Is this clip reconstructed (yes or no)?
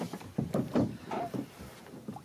yes